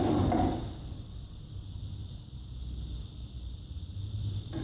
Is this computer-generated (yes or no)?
no